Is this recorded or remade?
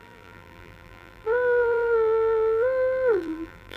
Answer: remade